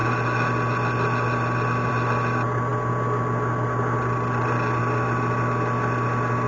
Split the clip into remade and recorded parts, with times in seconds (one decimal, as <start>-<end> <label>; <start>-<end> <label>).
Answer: 0.0-6.5 recorded